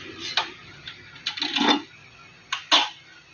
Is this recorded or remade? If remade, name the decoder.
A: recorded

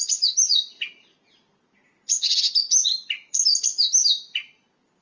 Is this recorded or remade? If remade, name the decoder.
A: recorded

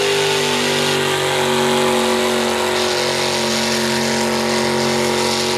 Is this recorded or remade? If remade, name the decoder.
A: recorded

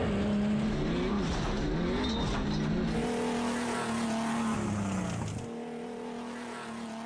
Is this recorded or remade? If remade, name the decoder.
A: recorded